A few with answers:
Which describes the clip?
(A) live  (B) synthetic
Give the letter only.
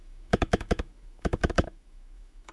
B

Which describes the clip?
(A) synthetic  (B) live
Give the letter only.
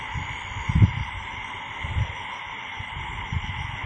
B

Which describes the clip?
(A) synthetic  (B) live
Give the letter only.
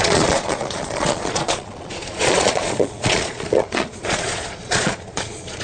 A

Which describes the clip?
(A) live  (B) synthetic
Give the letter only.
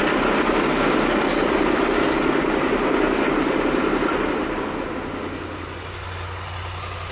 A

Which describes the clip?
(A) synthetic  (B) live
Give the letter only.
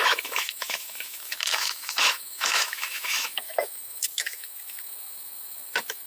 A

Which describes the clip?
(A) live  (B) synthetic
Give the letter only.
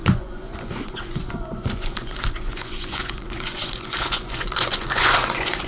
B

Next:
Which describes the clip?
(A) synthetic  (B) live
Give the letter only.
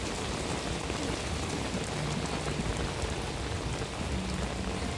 B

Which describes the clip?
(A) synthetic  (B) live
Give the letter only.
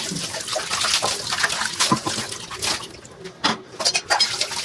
B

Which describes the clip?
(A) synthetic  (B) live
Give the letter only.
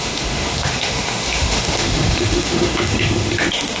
A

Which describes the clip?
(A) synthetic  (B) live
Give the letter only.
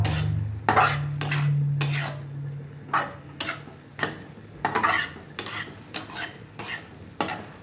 B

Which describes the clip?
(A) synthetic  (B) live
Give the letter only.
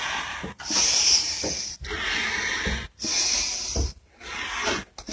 B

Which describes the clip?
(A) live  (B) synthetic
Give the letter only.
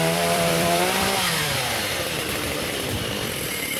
B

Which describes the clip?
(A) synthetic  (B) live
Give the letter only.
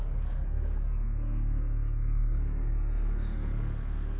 A